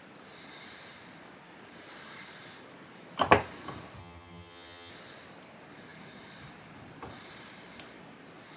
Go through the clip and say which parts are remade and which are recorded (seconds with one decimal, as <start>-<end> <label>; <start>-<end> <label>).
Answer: 0.0-4.0 recorded; 4.0-4.9 remade; 4.9-8.6 recorded